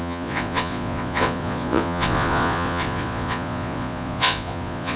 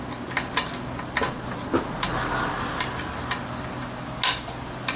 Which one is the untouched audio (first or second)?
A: second